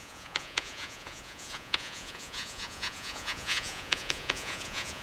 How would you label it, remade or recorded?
remade